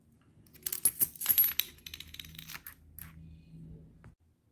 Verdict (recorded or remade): recorded